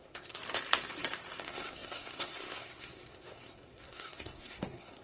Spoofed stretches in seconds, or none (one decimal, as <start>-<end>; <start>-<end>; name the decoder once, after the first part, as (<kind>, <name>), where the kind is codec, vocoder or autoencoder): 0.0-0.4 (codec, SNAC); 1.4-5.0